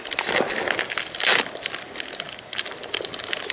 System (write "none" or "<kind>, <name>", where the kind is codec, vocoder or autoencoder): none